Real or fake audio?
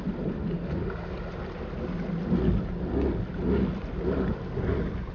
real